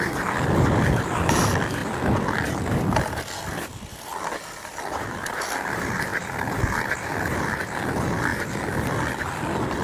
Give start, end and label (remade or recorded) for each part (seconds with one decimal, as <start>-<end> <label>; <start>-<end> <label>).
0.0-9.8 recorded